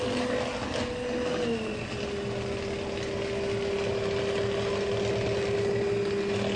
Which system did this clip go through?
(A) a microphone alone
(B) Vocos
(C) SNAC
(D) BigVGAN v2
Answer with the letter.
A